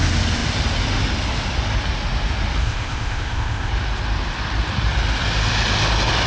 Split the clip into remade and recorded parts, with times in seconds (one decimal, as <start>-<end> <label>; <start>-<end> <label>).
0.0-2.6 recorded; 2.6-3.7 remade; 3.7-6.3 recorded